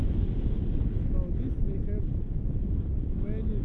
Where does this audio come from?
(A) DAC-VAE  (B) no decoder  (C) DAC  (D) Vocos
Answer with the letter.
B